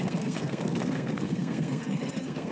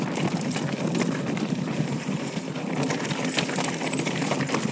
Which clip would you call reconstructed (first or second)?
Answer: first